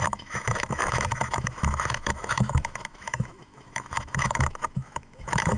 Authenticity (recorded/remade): remade